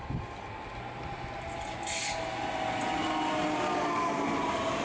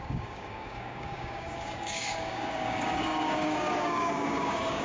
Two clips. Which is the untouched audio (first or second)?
first